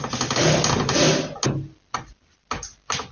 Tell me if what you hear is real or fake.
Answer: real